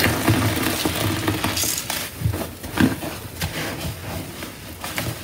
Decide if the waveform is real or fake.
real